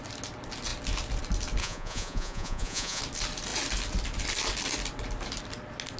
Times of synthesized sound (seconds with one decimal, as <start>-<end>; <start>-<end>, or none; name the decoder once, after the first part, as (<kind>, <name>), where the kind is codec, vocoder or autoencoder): 1.6-3.0 (vocoder, Vocos)